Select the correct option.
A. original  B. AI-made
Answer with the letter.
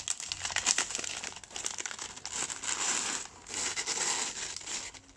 A